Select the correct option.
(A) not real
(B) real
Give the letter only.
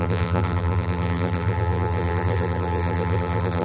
A